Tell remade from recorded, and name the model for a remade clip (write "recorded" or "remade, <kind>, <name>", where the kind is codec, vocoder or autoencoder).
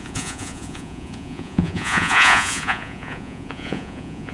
remade, vocoder, Vocos